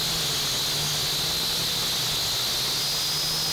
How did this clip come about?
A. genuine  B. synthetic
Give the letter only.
A